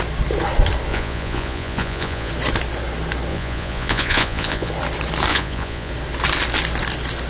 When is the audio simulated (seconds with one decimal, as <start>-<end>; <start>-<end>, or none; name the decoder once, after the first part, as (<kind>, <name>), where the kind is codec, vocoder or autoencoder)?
0.9-2.3 (vocoder, Vocos); 3.3-4.7; 5.3-5.9